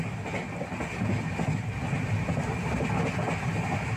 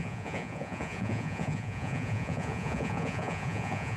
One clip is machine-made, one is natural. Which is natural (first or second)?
first